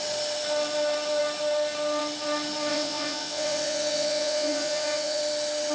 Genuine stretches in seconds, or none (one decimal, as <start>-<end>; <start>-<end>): 0.0-2.7; 5.2-5.7